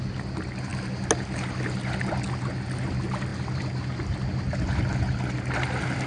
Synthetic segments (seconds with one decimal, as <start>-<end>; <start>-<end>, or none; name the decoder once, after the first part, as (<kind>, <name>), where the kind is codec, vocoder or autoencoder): none